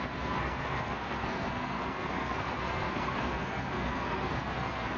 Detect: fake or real fake